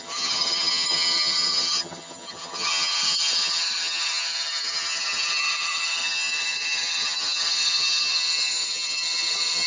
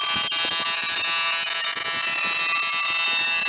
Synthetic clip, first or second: first